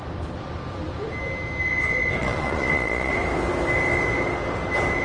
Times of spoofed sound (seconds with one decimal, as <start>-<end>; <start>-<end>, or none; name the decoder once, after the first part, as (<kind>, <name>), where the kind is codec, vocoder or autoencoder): 2.2-3.1 (vocoder, Vocos)